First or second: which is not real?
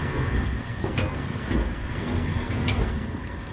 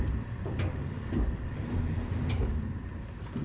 first